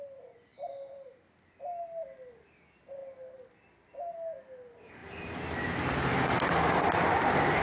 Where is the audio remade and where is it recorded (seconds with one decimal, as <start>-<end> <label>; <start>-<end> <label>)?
0.0-7.6 recorded